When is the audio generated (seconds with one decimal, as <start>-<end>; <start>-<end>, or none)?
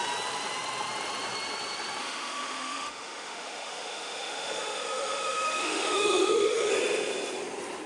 2.0-6.7